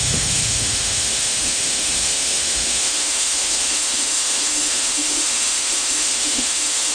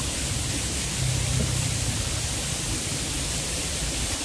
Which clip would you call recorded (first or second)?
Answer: second